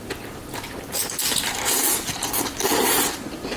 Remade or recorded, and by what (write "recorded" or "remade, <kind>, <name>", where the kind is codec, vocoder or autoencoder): recorded